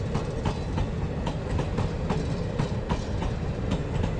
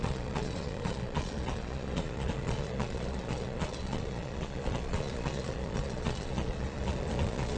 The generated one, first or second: second